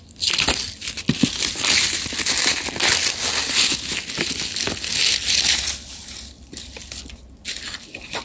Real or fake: real